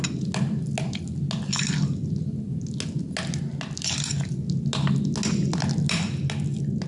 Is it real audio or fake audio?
real